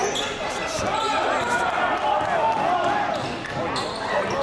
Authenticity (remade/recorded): recorded